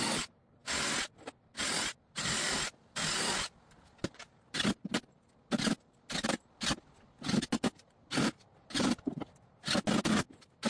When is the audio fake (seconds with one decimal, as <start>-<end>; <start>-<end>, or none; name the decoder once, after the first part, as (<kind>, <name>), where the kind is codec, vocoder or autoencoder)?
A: none